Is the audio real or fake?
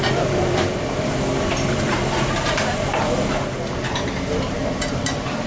fake